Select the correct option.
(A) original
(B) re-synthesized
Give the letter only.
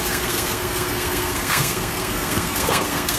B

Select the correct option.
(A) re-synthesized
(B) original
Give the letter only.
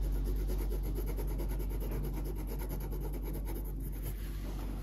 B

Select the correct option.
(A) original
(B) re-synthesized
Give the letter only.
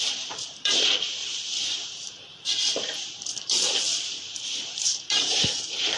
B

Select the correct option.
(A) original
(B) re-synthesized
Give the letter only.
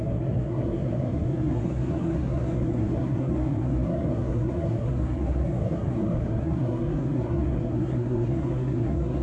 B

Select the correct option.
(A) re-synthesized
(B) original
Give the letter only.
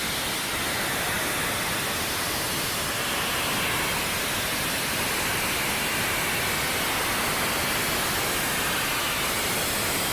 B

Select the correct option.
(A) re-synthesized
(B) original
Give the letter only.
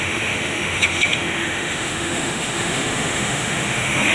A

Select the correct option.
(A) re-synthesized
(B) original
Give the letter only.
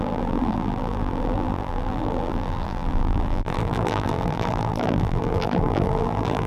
A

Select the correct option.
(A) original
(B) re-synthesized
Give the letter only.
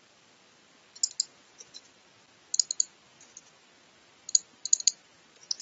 A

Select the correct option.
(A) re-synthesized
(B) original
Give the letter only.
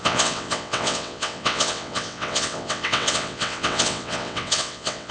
A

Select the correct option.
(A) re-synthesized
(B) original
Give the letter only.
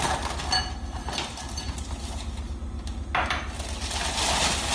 B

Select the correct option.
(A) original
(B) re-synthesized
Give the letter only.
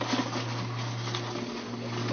A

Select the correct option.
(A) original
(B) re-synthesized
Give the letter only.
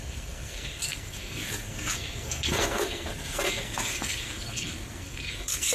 B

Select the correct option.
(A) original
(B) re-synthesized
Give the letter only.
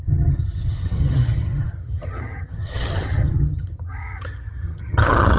B